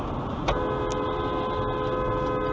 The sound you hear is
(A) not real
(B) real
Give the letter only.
B